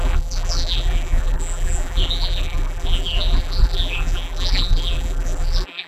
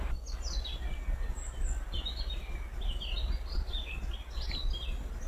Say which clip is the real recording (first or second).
second